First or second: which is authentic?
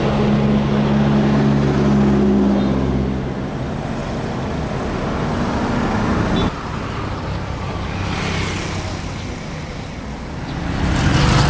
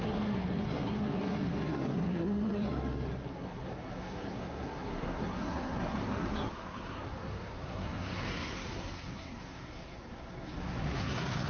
first